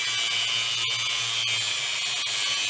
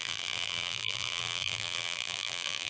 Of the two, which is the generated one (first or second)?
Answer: second